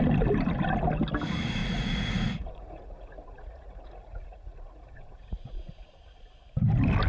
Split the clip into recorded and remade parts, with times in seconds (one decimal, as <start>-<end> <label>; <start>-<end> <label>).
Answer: 0.0-1.6 recorded; 1.6-5.9 remade; 5.9-7.1 recorded